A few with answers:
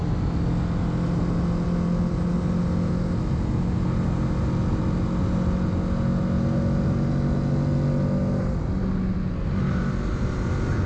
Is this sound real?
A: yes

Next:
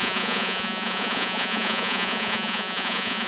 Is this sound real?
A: no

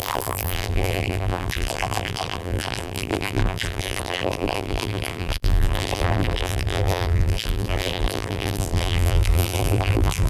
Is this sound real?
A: no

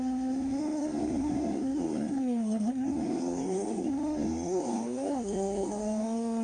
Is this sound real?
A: no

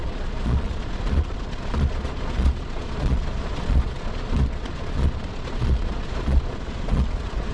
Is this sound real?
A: no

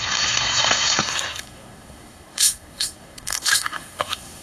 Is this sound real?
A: no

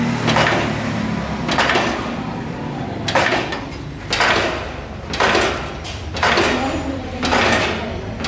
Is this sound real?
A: yes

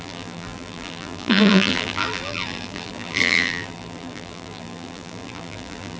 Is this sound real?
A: no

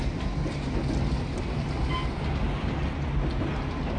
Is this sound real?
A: yes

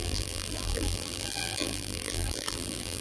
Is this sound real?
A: no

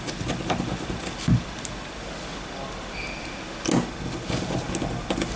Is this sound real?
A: yes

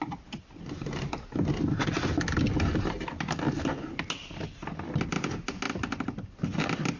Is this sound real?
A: yes